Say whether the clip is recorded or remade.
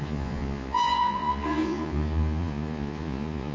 remade